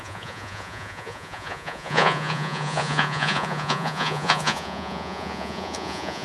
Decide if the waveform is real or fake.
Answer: fake